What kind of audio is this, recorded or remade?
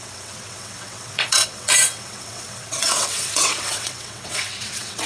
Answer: remade